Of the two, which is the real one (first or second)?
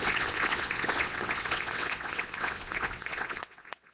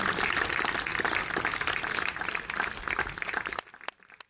second